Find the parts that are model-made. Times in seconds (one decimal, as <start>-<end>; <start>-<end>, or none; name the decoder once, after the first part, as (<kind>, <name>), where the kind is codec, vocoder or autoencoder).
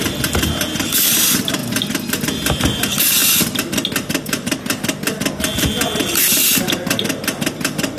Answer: none